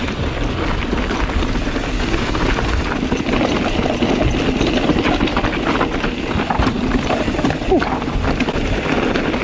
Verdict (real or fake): real